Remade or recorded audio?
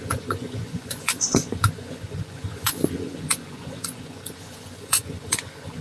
remade